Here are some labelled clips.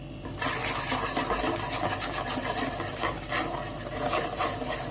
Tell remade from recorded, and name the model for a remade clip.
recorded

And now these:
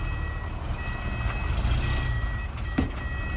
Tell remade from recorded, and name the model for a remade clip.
recorded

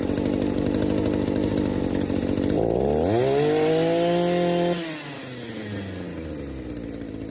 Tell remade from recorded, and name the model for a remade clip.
recorded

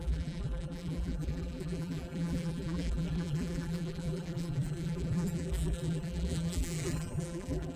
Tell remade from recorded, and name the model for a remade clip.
remade, vocoder, BigVGAN v2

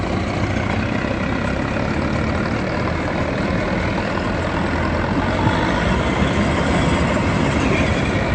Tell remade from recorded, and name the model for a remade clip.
recorded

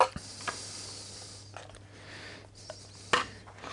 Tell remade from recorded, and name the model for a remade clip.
recorded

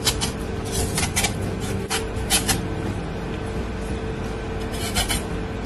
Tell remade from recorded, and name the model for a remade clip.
remade, vocoder, BigVGAN v2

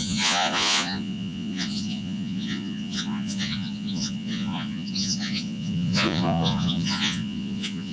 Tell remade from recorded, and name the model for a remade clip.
remade, vocoder, Vocos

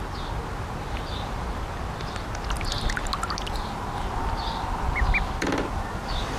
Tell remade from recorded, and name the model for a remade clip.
recorded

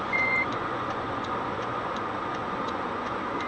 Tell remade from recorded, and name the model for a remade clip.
remade, vocoder, Vocos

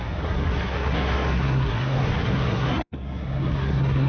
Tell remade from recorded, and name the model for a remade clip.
remade, codec, SNAC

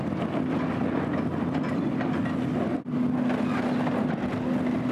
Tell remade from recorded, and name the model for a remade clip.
recorded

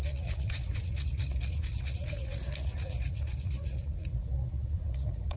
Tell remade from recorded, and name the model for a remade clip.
remade, vocoder, Vocos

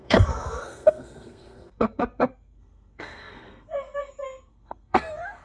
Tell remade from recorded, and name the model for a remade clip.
remade, codec, SNAC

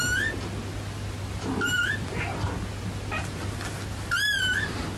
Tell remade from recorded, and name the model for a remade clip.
recorded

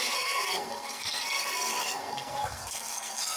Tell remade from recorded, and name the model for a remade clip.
remade, codec, SNAC